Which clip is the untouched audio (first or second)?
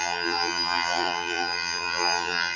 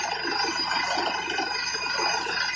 second